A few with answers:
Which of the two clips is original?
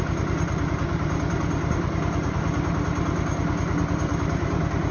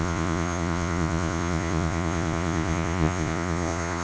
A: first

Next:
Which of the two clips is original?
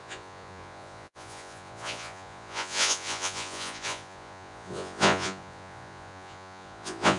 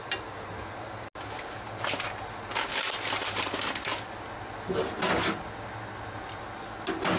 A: second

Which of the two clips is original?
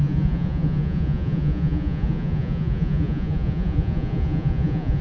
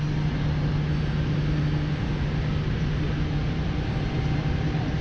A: second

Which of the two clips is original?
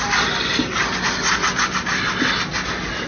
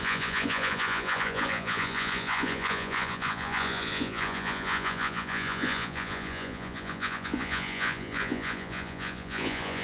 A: first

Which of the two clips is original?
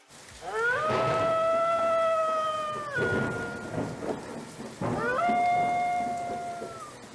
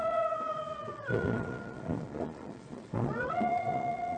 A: first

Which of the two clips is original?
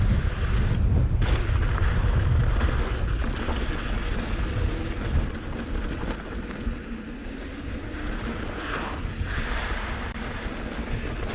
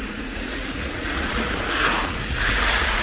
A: first